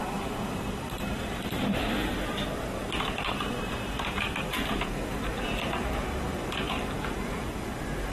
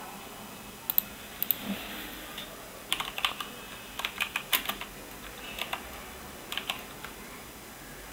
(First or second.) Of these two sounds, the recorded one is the second